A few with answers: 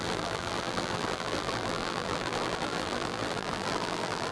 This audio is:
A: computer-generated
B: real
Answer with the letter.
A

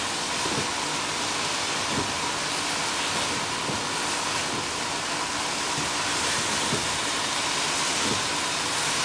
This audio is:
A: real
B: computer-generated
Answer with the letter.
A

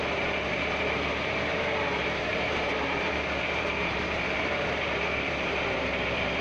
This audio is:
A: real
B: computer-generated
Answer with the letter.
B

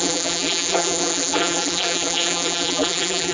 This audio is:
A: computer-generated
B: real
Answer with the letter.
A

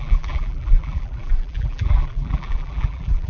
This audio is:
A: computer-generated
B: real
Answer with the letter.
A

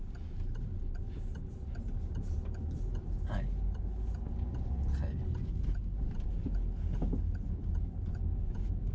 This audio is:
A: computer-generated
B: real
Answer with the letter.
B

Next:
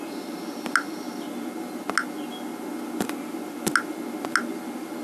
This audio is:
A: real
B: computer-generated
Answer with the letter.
A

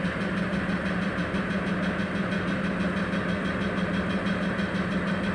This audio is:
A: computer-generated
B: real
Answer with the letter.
B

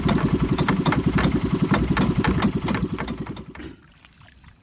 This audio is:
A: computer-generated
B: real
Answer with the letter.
A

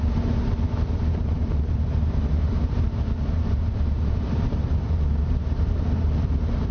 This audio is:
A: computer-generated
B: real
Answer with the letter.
A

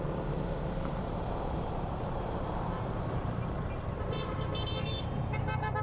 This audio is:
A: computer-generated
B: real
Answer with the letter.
A